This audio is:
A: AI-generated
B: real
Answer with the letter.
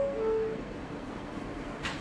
A